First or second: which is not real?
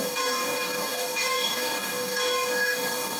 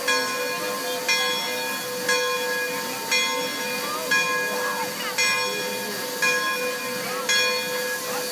first